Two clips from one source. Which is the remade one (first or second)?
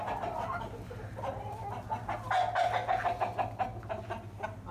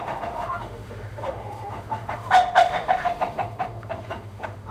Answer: second